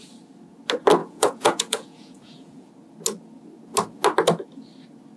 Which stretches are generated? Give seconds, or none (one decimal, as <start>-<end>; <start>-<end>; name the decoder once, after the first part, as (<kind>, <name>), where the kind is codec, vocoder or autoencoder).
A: 1.0-2.7 (vocoder, Vocos)